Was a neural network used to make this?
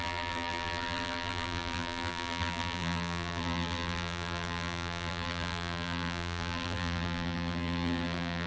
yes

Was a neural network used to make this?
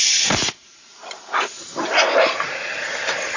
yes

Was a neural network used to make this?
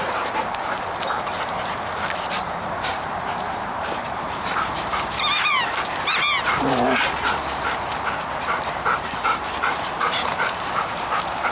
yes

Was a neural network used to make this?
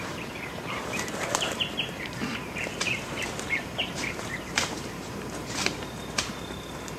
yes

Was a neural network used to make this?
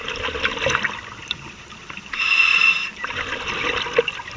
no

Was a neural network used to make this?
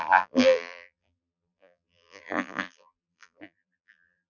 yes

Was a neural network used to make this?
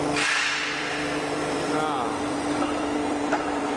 yes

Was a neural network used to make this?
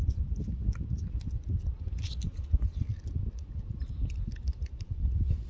no